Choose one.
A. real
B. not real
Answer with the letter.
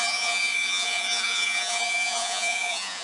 B